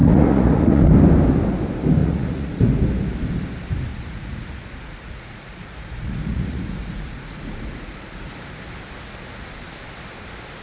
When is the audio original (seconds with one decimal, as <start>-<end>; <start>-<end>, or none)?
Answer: 0.9-2.0; 2.7-3.9; 8.3-10.6